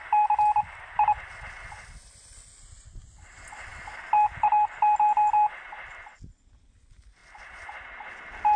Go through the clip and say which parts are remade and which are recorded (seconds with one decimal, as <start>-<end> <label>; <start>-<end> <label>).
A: 0.0-7.2 recorded; 7.2-7.8 remade; 7.8-8.6 recorded